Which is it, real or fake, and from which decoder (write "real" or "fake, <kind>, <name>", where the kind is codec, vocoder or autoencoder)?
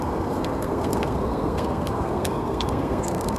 fake, codec, SNAC